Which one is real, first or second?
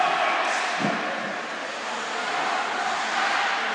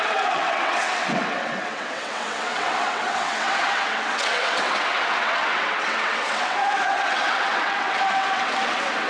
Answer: first